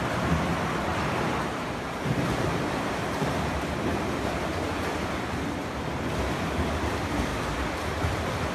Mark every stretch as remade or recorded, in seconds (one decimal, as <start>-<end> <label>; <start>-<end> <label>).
0.0-0.9 recorded; 0.9-4.5 remade; 4.5-8.5 recorded

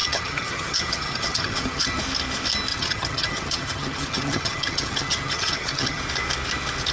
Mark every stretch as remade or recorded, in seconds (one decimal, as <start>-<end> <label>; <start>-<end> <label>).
0.0-2.0 remade; 2.0-2.7 recorded; 2.7-6.0 remade; 6.0-6.9 recorded

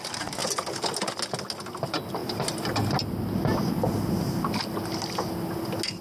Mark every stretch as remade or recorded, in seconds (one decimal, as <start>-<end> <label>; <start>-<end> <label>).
0.0-6.0 recorded

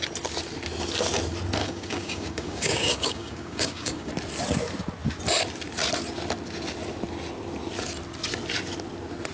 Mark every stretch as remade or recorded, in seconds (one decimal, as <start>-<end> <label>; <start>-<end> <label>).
0.0-1.6 recorded; 1.6-4.1 remade; 4.1-9.3 recorded

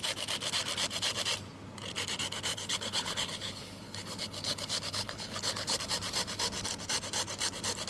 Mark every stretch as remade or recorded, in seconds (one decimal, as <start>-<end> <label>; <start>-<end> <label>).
0.0-2.5 recorded; 2.5-5.8 remade; 5.8-7.9 recorded

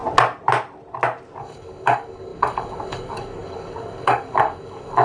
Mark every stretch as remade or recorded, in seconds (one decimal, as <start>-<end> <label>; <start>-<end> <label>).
0.0-1.4 recorded; 1.4-5.0 remade